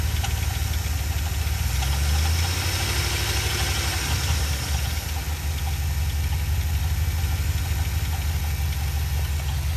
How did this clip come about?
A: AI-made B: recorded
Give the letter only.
B